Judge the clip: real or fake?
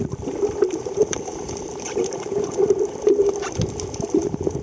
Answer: real